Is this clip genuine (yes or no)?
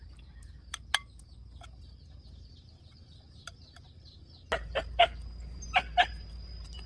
yes